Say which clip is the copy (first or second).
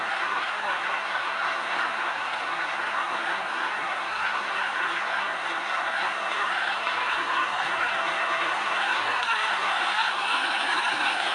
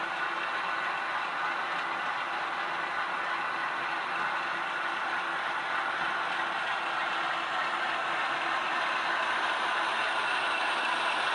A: first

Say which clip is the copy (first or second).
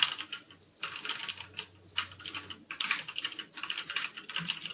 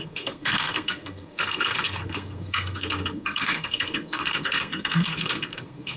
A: second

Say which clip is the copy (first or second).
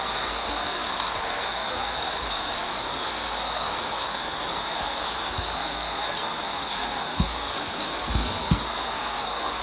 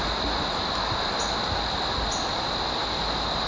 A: first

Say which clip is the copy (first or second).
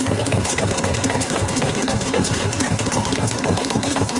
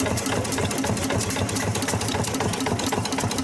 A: first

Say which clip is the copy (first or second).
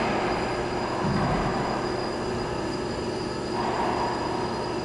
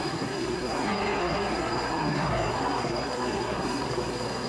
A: second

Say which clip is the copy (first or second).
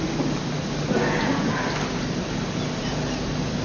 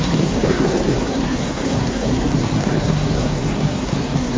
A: second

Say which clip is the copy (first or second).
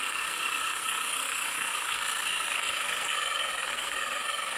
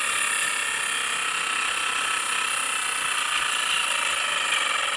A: first